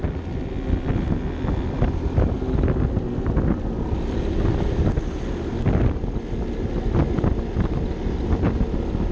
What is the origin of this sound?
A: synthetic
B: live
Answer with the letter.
B